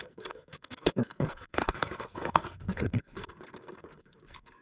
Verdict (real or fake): fake